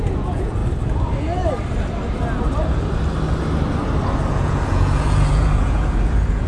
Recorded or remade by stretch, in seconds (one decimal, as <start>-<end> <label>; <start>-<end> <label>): 0.0-0.6 remade; 0.6-4.3 recorded; 4.3-6.5 remade